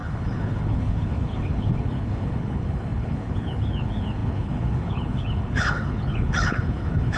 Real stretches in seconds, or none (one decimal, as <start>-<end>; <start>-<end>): none